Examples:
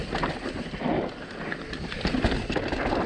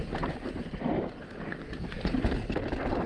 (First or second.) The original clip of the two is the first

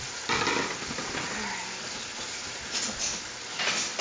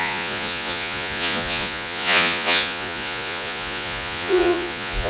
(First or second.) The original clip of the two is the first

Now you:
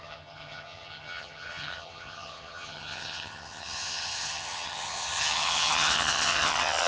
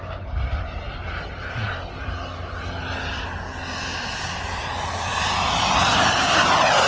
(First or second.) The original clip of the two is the second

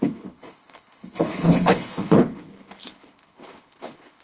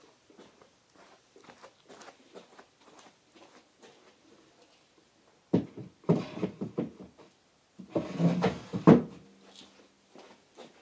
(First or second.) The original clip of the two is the second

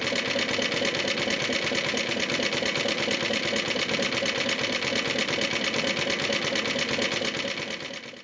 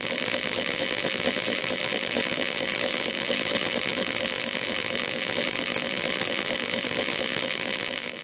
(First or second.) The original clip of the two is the first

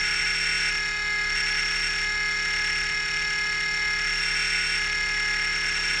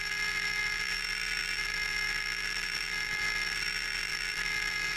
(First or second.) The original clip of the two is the first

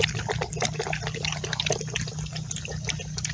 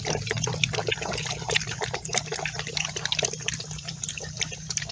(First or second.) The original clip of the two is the first